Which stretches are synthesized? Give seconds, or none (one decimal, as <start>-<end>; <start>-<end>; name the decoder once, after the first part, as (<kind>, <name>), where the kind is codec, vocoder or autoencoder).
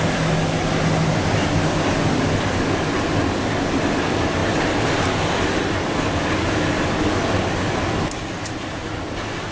none